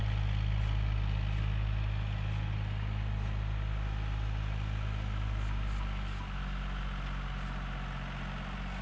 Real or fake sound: real